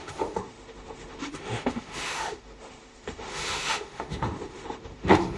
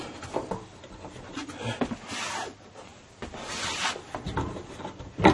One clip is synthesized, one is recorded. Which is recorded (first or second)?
second